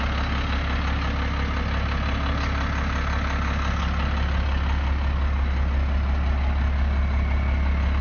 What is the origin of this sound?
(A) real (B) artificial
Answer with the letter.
A